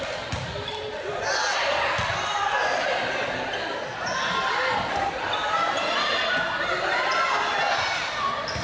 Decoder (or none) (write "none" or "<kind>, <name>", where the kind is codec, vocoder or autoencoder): none